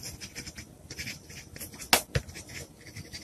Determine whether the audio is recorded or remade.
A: recorded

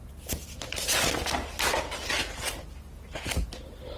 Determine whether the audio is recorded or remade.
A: recorded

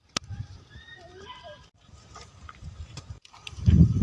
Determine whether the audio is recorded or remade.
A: remade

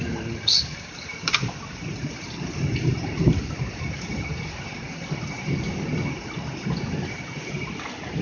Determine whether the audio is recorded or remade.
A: remade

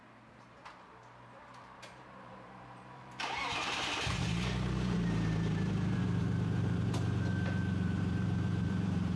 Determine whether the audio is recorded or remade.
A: remade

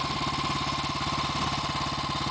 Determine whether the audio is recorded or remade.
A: recorded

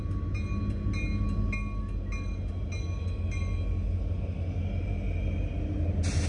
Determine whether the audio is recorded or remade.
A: recorded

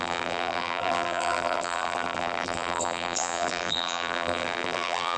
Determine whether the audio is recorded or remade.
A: remade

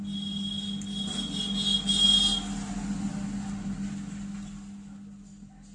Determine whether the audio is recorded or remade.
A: recorded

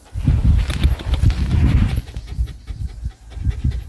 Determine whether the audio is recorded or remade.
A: recorded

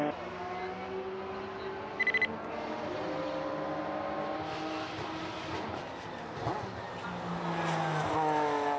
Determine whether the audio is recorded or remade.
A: recorded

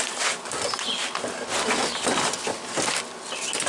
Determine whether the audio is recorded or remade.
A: recorded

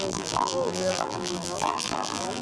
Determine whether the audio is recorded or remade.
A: remade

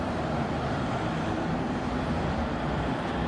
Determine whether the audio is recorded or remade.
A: remade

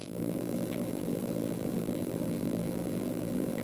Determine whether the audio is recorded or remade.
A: remade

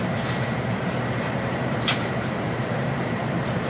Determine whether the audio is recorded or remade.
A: remade